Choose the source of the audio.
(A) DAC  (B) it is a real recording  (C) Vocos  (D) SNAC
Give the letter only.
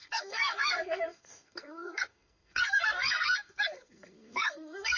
D